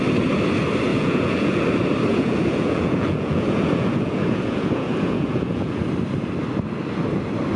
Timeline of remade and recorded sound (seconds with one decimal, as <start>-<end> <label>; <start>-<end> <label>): 0.0-0.9 recorded; 0.9-1.6 remade; 1.6-2.1 recorded; 2.1-5.8 remade; 5.8-7.6 recorded